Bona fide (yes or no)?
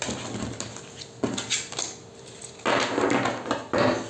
yes